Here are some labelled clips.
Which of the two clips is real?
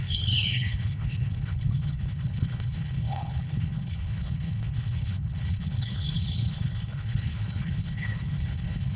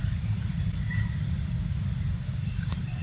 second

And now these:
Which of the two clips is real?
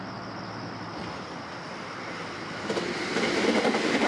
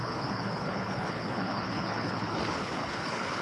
first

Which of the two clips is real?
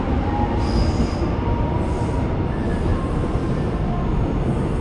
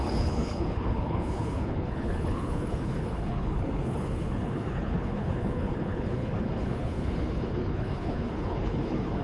first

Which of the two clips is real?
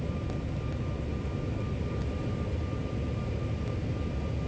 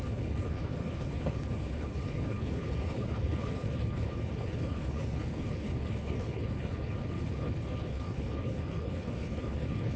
first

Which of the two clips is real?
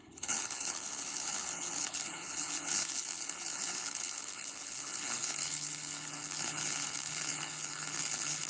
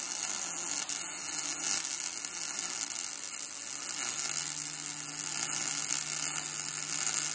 second